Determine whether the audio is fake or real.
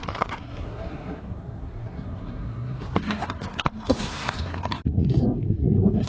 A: fake